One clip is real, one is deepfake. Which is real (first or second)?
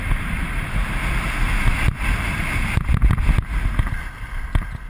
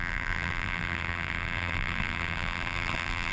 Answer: first